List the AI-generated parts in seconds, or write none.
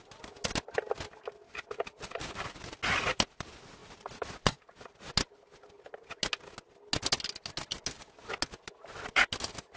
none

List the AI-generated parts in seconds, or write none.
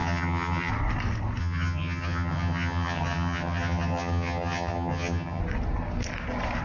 0.0-0.7 (vocoder, HiFi-GAN); 1.4-5.4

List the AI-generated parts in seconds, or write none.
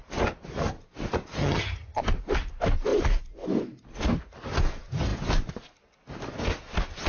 1.4-2.0 (vocoder, HiFi-GAN)